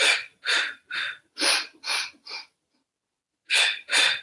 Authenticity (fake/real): real